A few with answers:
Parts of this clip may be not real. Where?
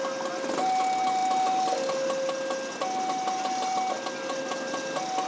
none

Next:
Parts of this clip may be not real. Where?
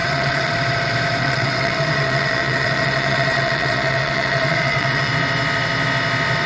0.0-0.5 (vocoder, WaveNeXt); 1.2-5.1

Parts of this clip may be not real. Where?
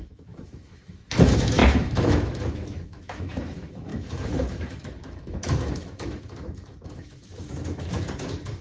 0.0-8.6 (autoencoder, DAC-VAE)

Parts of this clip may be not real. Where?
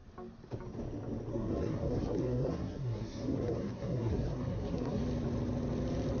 1.3-5.0 (codec, SNAC)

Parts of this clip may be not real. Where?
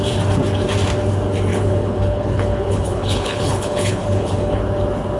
1.5-4.6 (codec, HILCodec)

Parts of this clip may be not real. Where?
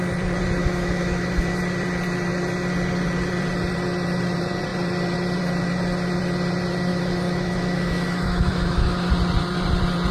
0.6-1.6 (autoencoder, DAC-VAE); 6.9-9.1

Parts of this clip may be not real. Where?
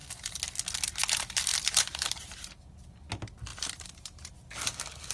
1.5-2.6 (vocoder, BigVGAN v2); 3.5-4.3